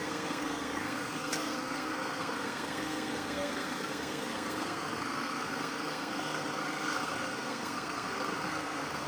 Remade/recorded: remade